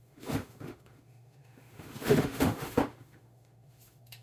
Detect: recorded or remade remade